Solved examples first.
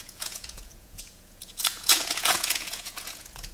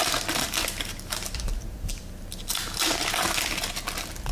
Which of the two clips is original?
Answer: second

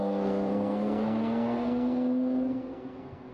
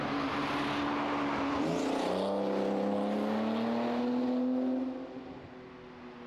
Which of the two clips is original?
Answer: second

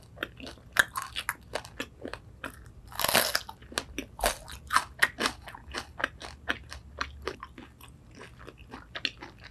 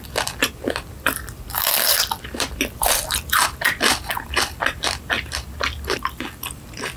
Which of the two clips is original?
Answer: first